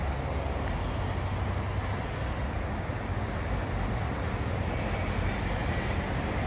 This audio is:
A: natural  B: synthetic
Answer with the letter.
A